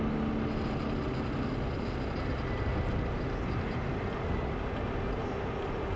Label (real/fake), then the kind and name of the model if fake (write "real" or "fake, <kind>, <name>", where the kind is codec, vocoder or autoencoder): real